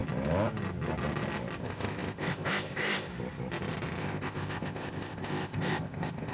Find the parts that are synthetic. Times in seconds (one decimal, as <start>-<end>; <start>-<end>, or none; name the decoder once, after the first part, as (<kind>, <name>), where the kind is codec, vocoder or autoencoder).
1.6-3.1 (codec, ZipCodec); 4.0-6.3